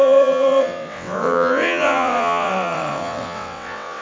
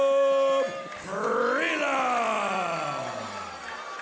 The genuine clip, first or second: second